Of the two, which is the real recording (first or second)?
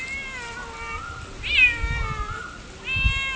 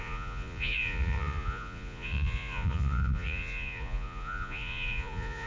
first